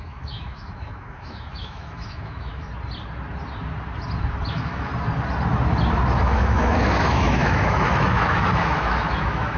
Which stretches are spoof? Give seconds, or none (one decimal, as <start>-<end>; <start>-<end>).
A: 0.0-2.7; 4.5-4.9; 6.2-9.6